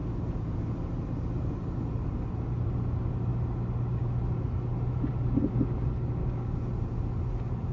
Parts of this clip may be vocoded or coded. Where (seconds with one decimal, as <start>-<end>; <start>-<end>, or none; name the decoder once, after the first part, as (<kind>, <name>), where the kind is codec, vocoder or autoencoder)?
6.2-6.7 (codec, DAC)